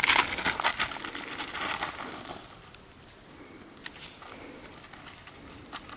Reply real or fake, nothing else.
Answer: real